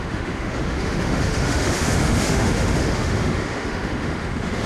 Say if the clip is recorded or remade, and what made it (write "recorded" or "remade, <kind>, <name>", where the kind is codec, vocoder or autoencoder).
remade, autoencoder, DAC-VAE